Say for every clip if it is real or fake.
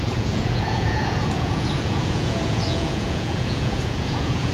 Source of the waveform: fake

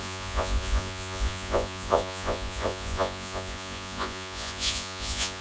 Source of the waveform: fake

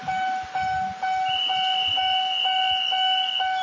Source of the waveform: real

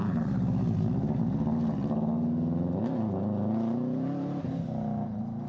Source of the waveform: real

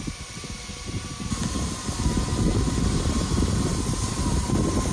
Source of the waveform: real